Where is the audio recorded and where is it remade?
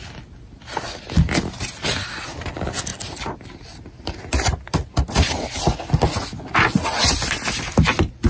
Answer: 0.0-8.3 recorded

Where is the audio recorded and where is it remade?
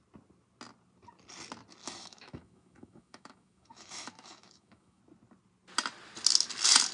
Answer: 0.0-1.8 recorded; 1.8-5.0 remade; 5.0-6.9 recorded